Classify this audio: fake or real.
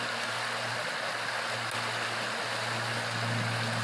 real